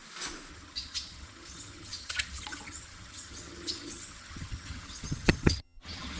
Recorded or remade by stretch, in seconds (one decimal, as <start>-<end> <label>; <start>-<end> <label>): 0.0-0.5 recorded; 0.5-6.2 remade